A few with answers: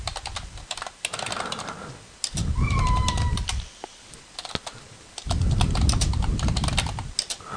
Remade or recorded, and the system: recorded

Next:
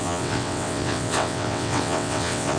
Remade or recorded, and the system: remade, vocoder, WaveNeXt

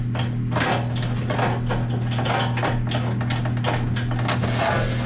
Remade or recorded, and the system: recorded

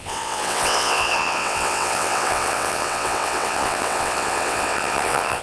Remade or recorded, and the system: remade, vocoder, WaveNeXt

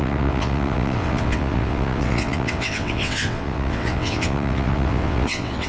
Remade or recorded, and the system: remade, vocoder, WaveNeXt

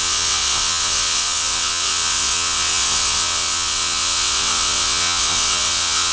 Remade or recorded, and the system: remade, vocoder, WaveNeXt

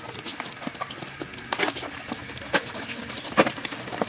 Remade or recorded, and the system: recorded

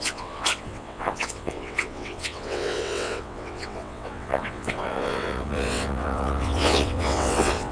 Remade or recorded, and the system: remade, vocoder, WaveNeXt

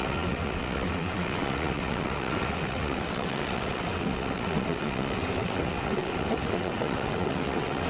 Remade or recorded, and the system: remade, vocoder, WaveNeXt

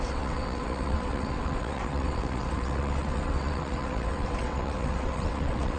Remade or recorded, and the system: remade, vocoder, WaveNeXt